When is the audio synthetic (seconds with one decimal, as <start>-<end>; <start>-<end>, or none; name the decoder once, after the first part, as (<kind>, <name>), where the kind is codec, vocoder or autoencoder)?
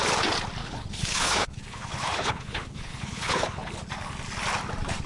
0.6-3.7 (codec, HILCodec)